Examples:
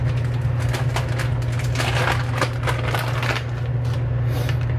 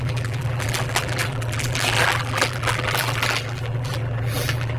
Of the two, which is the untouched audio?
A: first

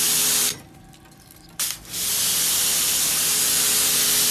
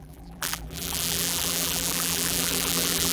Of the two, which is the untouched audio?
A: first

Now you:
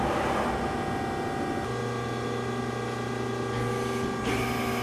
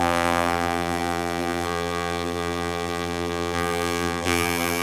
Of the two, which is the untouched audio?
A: first